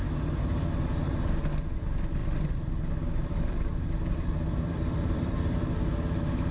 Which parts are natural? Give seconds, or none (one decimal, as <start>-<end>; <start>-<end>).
0.0-2.2; 5.7-6.5